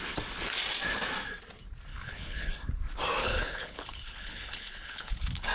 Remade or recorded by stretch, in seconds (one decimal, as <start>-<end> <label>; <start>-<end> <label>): 0.0-1.9 recorded; 1.9-2.5 remade; 2.5-3.2 recorded; 3.2-5.5 remade